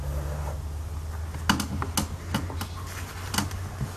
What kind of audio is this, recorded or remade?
recorded